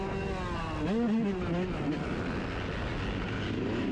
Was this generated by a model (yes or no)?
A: no